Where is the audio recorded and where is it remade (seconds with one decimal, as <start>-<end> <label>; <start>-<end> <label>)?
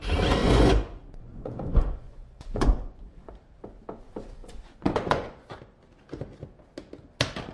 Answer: 0.0-0.4 recorded; 0.4-3.3 remade; 3.3-4.4 recorded; 4.4-5.6 remade; 5.6-7.5 recorded